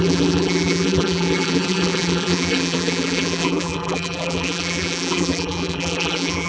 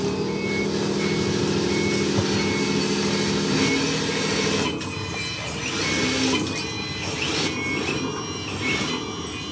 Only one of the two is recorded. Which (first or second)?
second